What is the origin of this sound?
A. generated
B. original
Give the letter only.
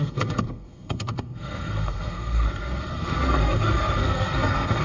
A